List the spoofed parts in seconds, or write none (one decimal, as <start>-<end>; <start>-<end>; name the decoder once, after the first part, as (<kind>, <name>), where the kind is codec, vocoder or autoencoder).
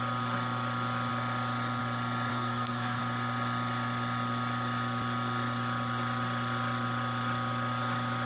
2.3-3.0 (codec, SNAC)